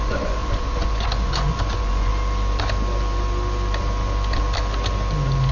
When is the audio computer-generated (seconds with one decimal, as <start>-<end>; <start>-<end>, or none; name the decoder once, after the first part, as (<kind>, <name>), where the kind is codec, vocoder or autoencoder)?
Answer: 0.0-2.1 (vocoder, Vocos)